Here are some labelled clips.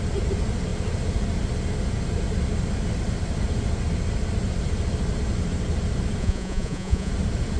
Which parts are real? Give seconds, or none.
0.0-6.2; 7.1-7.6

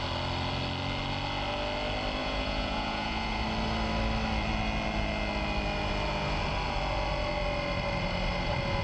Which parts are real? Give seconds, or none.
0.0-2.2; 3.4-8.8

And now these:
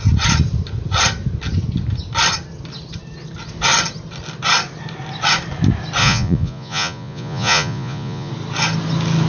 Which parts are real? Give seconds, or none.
0.0-6.0; 8.3-9.3

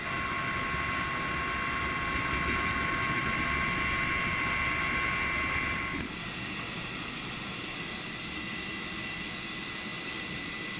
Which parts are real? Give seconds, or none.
0.0-10.8